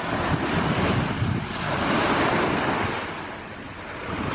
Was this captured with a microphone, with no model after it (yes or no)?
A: yes